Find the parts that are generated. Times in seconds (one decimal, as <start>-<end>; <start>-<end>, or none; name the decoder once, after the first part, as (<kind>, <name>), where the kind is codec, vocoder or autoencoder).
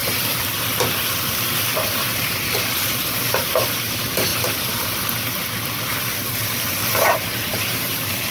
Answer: 1.3-8.3 (vocoder, BigVGAN v2)